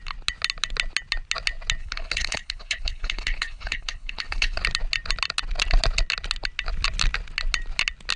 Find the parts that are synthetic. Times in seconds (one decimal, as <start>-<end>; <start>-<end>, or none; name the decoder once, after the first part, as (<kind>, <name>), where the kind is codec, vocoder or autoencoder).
1.8-4.6 (codec, HILCodec)